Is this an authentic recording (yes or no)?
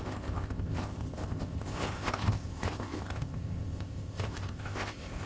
no